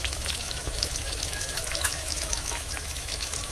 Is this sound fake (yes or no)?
yes